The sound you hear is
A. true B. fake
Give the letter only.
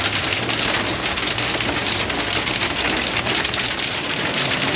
A